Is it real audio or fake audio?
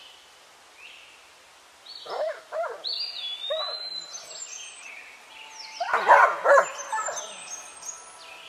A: real